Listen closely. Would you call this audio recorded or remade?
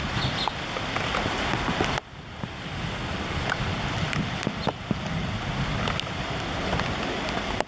recorded